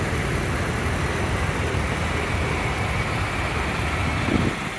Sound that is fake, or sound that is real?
real